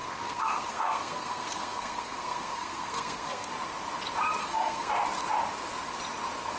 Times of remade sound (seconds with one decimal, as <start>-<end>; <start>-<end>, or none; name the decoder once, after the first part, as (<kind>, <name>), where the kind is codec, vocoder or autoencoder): 0.0-3.5 (codec, SNAC); 4.4-4.9